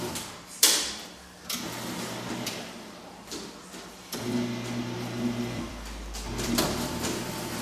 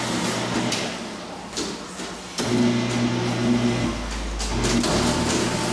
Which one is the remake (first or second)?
first